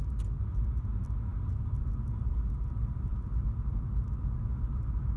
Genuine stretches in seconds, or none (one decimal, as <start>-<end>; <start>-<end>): 0.0-5.2